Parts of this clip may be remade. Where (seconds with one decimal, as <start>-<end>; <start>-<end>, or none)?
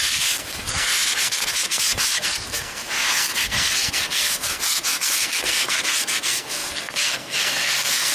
0.0-8.1